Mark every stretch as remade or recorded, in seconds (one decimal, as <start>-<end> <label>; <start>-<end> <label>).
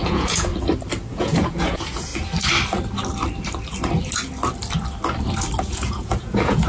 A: 0.0-0.5 remade; 0.5-1.1 recorded; 1.1-2.1 remade; 2.1-5.6 recorded; 5.6-6.7 remade